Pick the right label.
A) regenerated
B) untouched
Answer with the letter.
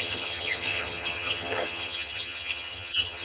A